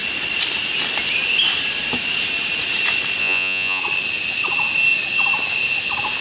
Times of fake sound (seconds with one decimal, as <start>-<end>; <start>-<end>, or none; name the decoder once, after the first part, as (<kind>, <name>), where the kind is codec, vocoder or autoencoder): 3.2-3.8 (vocoder, Vocos)